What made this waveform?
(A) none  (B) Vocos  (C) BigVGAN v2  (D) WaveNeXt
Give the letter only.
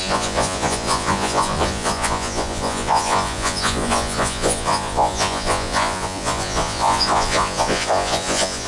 B